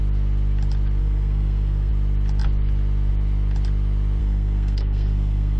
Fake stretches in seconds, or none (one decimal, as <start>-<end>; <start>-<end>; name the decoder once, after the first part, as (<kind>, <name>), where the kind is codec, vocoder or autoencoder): 1.0-1.9 (codec, SNAC); 4.2-5.6